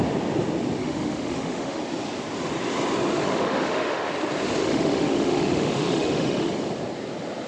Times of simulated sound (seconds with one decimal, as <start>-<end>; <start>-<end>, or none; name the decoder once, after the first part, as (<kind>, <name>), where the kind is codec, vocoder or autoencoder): 0.8-1.8 (autoencoder, DAC-VAE); 3.1-4.1; 4.6-6.5